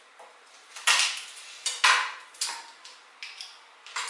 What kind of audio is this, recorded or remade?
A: recorded